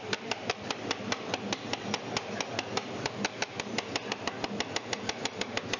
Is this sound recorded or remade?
recorded